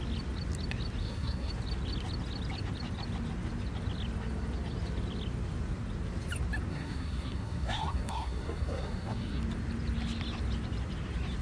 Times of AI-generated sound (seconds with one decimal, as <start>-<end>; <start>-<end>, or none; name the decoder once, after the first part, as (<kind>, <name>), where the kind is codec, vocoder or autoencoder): 1.0-1.5 (codec, SNAC); 6.7-9.4